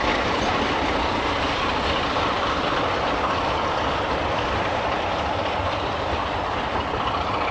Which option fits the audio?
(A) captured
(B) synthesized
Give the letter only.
A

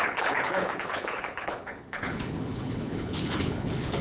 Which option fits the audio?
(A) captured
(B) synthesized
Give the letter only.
B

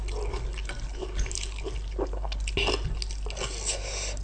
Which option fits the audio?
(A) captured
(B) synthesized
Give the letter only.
A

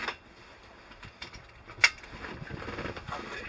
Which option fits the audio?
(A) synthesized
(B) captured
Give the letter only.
B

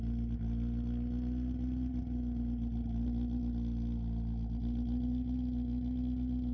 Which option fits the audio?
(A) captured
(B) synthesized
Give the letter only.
A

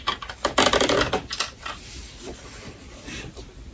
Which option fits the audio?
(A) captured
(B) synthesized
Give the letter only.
A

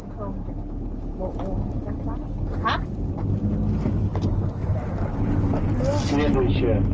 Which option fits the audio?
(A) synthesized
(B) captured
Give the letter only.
B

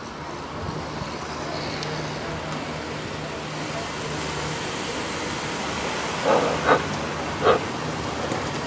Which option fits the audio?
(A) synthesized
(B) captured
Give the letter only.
B